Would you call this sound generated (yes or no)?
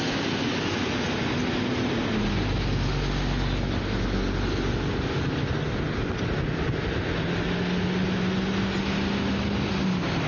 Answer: no